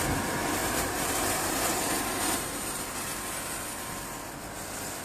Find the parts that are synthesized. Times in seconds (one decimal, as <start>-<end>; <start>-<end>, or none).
0.6-3.6